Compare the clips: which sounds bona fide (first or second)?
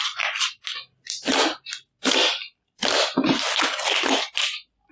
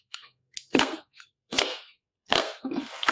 first